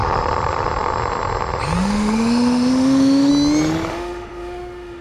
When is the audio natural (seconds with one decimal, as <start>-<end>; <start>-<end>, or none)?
0.0-1.8; 3.3-3.9